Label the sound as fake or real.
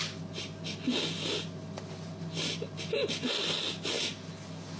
real